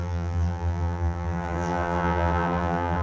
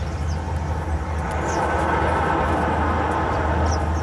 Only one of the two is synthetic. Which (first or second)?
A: first